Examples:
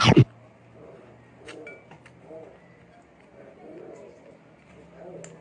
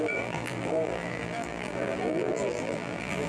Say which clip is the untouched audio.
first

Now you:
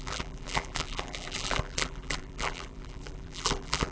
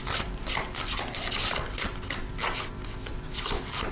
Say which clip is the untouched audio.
second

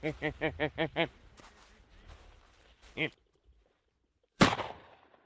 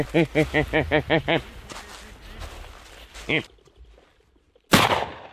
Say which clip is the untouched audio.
second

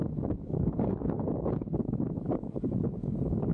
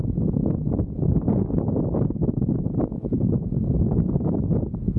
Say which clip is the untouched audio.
second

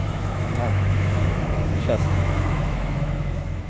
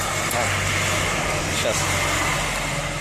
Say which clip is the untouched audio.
second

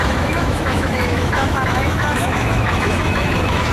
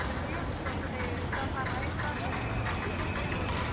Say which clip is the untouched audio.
second